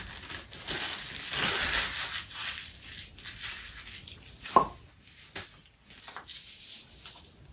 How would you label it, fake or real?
real